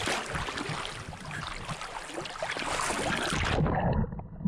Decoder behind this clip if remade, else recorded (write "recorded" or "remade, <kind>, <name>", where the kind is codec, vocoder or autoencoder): recorded